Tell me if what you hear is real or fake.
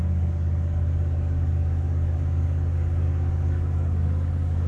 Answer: fake